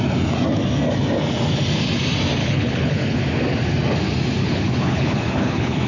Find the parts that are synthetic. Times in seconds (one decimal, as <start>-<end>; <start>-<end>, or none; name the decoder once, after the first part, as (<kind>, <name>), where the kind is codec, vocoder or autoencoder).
2.4-3.2 (codec, HILCodec); 4.4-5.9